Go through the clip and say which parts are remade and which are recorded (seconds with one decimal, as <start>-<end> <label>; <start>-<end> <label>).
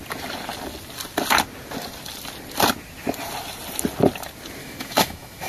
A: 0.0-4.6 recorded; 4.6-5.5 remade